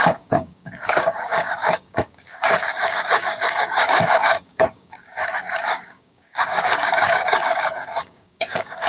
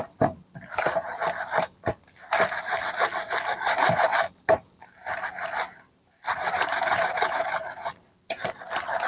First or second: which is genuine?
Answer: second